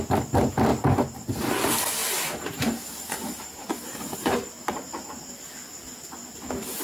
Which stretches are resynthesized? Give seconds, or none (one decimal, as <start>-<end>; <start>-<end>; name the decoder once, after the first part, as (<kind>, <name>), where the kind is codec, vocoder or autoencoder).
0.7-1.4 (vocoder, BigVGAN v2); 2.0-5.2